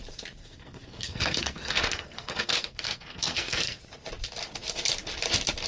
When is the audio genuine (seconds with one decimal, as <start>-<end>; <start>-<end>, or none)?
0.0-0.4; 3.8-5.7